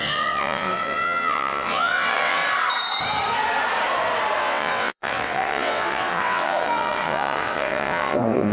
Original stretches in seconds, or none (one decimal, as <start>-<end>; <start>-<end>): 2.4-4.4